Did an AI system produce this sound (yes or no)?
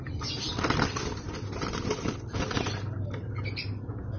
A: no